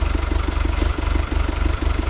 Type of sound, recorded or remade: recorded